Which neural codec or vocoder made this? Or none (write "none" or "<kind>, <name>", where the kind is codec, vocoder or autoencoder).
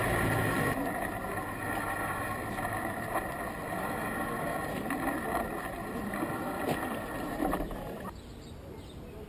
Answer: vocoder, BigVGAN v2